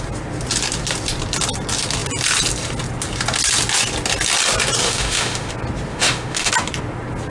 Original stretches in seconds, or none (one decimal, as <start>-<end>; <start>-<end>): 0.0-4.8; 5.5-5.9; 6.5-7.3

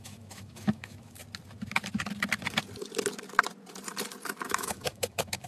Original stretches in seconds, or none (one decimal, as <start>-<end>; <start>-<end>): 1.2-4.5

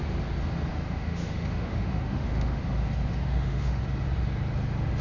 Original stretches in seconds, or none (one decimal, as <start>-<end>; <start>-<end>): 0.0-0.7; 2.6-3.1; 3.8-5.0

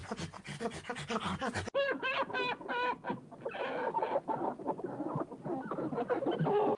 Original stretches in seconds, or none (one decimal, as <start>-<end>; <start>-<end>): 0.0-6.8

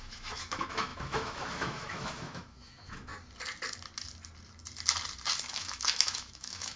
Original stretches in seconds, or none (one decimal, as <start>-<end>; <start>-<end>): 3.1-5.5

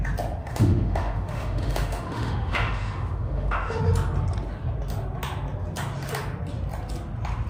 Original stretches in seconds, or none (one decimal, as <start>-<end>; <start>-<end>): 0.0-0.4; 3.8-7.5

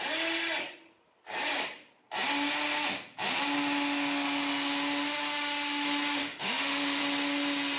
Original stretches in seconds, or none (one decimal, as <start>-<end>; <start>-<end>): 0.0-6.2; 7.0-7.8